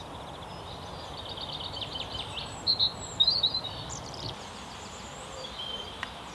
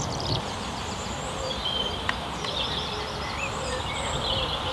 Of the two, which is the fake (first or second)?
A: second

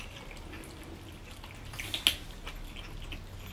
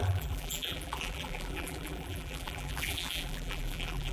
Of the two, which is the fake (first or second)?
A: second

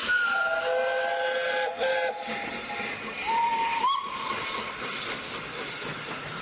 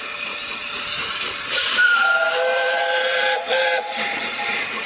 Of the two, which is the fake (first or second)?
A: second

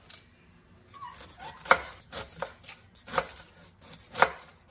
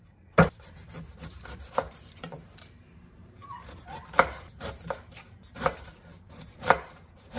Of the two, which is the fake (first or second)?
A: second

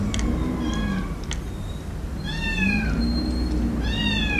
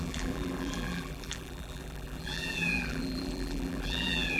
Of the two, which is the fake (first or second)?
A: second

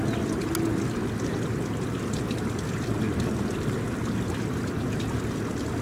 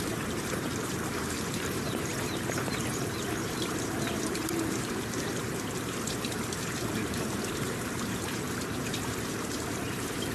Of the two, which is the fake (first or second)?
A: second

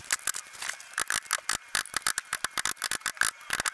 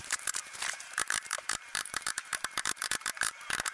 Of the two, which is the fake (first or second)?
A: second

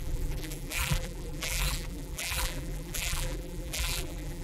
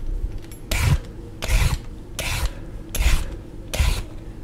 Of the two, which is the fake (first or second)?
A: first